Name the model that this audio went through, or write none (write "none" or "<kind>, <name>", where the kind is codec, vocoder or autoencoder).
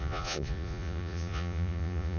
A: vocoder, Vocos